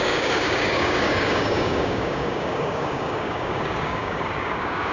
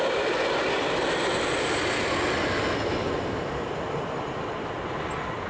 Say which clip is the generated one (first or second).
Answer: first